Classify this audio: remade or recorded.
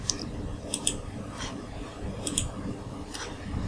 remade